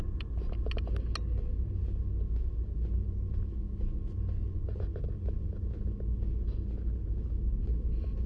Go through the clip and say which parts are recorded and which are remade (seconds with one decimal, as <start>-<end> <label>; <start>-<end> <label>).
0.0-8.3 recorded